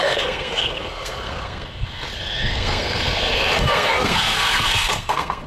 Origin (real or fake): fake